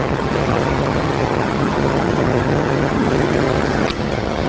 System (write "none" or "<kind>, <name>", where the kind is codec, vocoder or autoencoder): vocoder, HiFi-GAN